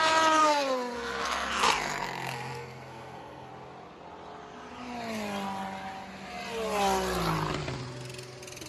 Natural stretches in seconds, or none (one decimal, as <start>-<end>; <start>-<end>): 0.0-0.4; 3.5-8.7